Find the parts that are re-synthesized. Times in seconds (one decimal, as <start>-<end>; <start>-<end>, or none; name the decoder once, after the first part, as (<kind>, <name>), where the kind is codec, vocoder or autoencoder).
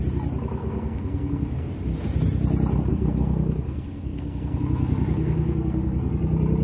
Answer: 0.6-1.7 (codec, SNAC); 2.9-6.1